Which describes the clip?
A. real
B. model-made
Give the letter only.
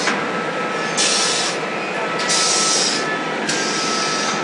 A